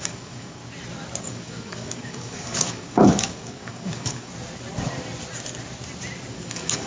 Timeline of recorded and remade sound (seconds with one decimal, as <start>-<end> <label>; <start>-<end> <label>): 0.0-0.6 remade; 0.6-1.2 recorded; 1.2-4.3 remade; 4.3-6.3 recorded; 6.3-6.9 remade

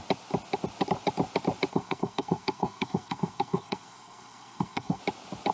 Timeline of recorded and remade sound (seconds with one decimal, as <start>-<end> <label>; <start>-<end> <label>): 0.0-1.7 recorded; 1.7-5.0 remade; 5.0-5.5 recorded

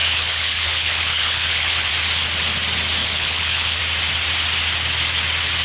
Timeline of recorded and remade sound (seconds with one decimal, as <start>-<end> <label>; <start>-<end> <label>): 0.0-1.9 remade; 1.9-3.0 recorded; 3.0-3.8 remade; 3.8-5.6 recorded

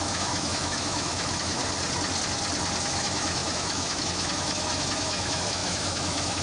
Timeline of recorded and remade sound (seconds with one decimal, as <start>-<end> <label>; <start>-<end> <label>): 0.0-1.6 remade; 1.6-2.8 recorded; 2.8-6.4 remade

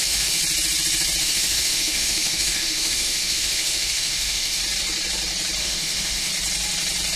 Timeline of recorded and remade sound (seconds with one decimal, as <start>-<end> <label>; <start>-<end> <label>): 0.0-0.4 remade; 0.4-1.2 recorded; 1.2-4.6 remade; 4.6-5.6 recorded; 5.6-6.3 remade; 6.3-7.2 recorded